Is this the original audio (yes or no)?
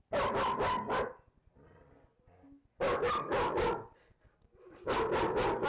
yes